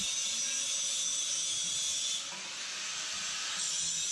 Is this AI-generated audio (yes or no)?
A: no